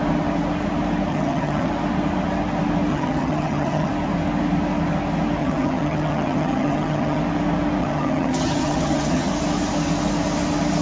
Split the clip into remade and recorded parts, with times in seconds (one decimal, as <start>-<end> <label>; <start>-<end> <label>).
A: 0.0-1.1 recorded; 1.1-1.7 remade; 1.7-2.9 recorded; 2.9-3.9 remade; 3.9-5.4 recorded; 5.4-7.2 remade; 7.2-7.8 recorded; 7.8-9.3 remade; 9.3-10.8 recorded